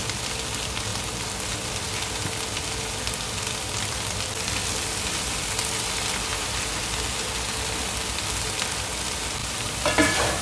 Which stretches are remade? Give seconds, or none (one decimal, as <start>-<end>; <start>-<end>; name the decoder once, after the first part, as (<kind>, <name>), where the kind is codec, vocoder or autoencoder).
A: 6.3-6.8 (vocoder, BigVGAN v2); 9.4-10.4